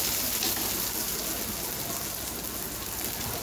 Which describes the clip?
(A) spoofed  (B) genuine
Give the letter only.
B